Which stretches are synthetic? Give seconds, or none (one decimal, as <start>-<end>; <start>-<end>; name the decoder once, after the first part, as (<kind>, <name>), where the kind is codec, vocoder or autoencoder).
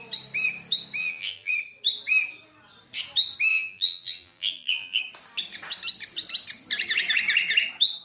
1.0-1.5 (vocoder, BigVGAN v2); 3.5-5.0